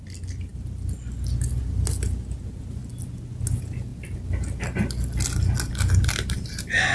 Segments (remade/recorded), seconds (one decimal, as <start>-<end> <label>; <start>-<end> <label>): 0.0-6.9 recorded

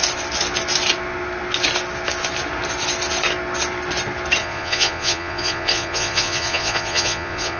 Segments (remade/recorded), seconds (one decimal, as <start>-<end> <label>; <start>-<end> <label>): 0.0-4.4 recorded; 4.4-7.6 remade

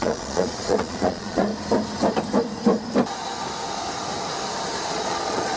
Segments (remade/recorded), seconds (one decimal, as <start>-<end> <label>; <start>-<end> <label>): 0.0-1.5 remade; 1.5-4.9 recorded; 4.9-5.6 remade

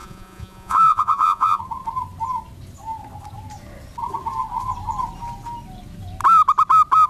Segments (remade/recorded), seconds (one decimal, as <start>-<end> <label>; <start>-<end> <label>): 0.0-1.6 remade; 1.6-7.1 recorded

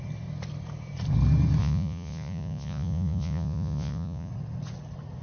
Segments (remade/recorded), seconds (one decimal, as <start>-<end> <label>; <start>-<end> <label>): 0.0-1.6 recorded; 1.6-4.3 remade; 4.3-5.2 recorded

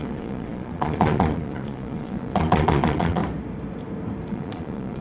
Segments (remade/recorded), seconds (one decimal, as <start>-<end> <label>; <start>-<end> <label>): 0.0-3.2 remade; 3.2-4.3 recorded; 4.3-5.0 remade

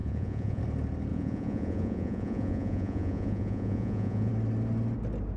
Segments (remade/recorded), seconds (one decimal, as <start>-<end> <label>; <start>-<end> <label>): 0.0-0.6 remade; 0.6-1.1 recorded; 1.1-4.3 remade; 4.3-5.4 recorded

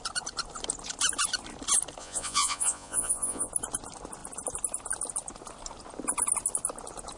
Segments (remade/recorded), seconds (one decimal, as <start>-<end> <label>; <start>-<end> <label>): 0.0-2.0 recorded; 2.0-3.5 remade; 3.5-7.2 recorded